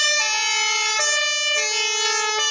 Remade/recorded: recorded